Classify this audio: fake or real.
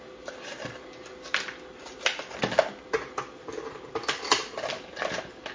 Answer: real